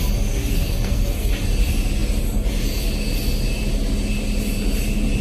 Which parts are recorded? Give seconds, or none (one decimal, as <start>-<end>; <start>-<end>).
0.0-0.4; 1.3-5.2